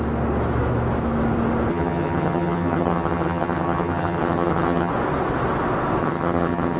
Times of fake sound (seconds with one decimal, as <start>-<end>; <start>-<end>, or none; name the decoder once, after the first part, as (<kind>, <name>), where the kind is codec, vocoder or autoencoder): 1.7-4.9 (vocoder, HiFi-GAN); 6.0-6.8